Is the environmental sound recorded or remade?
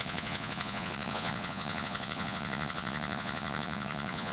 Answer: remade